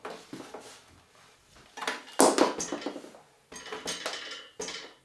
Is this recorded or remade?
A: recorded